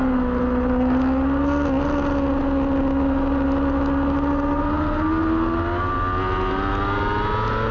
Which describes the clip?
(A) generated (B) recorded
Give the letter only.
B